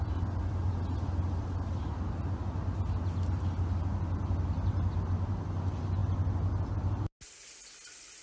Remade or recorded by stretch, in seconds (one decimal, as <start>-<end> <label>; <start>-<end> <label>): 0.0-8.2 recorded